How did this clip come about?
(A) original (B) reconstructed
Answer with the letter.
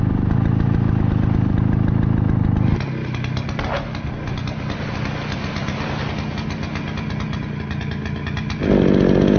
A